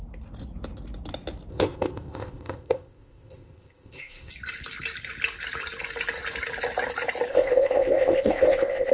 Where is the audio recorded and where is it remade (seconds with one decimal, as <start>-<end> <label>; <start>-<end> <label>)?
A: 0.0-1.5 recorded; 1.5-4.3 remade; 4.3-7.3 recorded; 7.3-8.9 remade

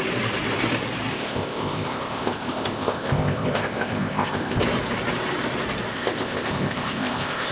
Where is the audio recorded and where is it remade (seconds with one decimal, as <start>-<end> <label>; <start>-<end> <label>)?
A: 0.0-1.1 recorded; 1.1-4.6 remade; 4.6-5.9 recorded; 5.9-7.5 remade

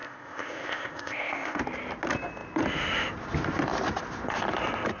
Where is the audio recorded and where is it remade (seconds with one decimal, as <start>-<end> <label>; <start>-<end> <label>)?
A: 0.0-1.6 remade; 1.6-5.0 recorded